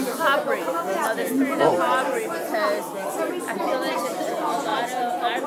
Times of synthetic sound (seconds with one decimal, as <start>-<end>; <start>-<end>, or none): 1.2-1.7